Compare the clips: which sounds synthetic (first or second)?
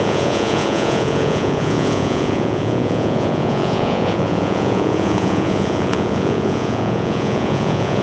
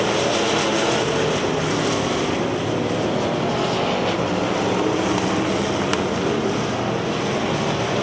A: first